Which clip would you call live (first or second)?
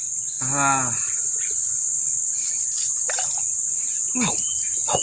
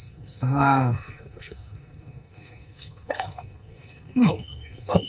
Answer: first